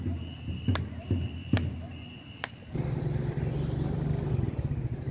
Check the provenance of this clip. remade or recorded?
recorded